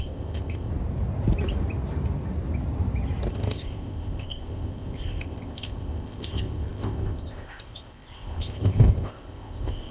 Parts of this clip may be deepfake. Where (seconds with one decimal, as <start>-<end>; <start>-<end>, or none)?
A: 0.0-0.7; 3.3-9.9